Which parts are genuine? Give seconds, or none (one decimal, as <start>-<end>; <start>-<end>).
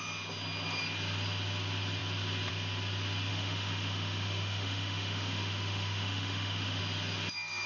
0.0-3.3; 6.8-7.7